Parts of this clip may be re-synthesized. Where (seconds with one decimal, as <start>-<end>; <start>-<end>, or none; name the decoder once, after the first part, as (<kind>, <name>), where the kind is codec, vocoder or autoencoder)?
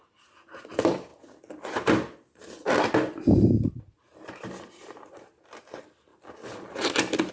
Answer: none